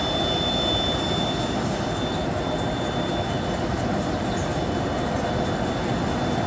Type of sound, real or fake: real